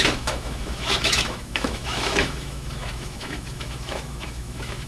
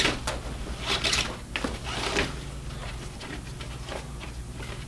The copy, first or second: first